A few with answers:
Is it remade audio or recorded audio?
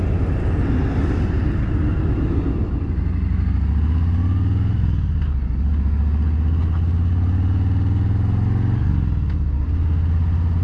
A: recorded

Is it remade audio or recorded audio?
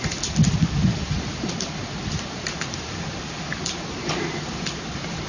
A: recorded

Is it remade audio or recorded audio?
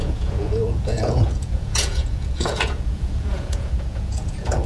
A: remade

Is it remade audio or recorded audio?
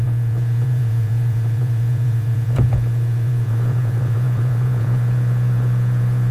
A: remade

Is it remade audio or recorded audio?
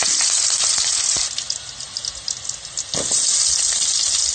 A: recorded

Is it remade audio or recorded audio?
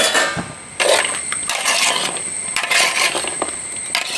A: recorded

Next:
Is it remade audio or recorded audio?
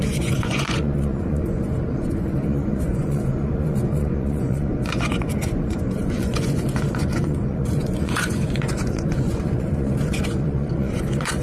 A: remade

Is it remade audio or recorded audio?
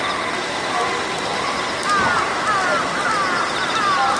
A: recorded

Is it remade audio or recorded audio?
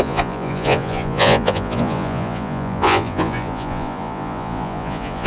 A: remade